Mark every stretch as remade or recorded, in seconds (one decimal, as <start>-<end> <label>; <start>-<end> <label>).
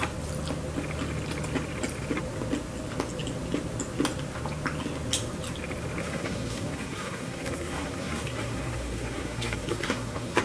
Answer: 0.0-6.0 recorded; 6.0-10.4 remade